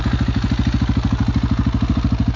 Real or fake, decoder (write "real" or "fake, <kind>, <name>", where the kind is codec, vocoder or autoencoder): real